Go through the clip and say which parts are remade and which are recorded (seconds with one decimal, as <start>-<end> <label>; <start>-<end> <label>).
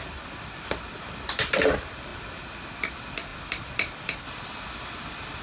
0.0-3.3 recorded; 3.3-4.4 remade; 4.4-5.4 recorded